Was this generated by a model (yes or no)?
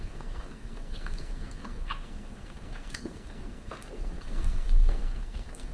yes